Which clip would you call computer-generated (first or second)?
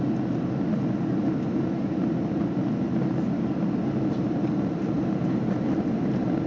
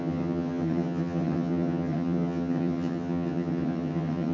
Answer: second